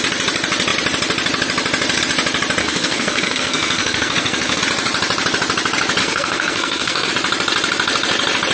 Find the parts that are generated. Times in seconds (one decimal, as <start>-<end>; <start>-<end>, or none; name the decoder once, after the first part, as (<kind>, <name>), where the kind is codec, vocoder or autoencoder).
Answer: 2.6-4.6 (codec, SNAC); 6.0-7.1